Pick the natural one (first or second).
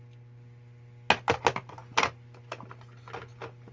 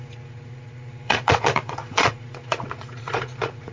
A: first